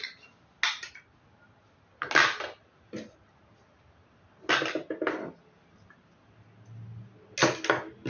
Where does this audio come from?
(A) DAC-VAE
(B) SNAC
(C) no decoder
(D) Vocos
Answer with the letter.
C